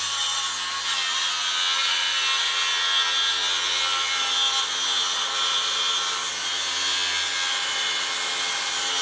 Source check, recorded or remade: recorded